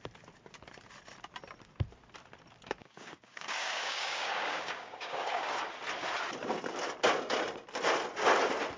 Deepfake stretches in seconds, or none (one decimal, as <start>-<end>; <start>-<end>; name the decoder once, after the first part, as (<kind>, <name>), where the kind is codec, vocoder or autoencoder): 2.8-5.6 (codec, DAC)